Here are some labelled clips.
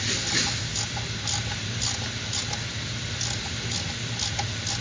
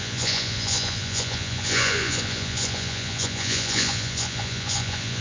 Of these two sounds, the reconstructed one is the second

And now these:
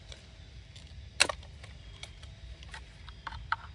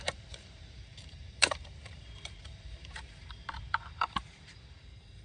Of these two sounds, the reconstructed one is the second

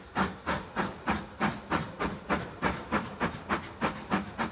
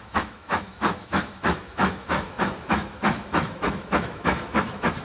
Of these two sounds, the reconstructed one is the second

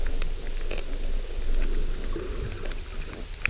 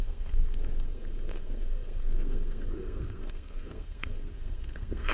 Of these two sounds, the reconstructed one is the second